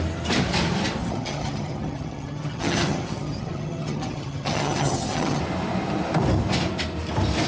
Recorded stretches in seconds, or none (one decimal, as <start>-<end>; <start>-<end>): 0.0-1.0; 5.4-7.5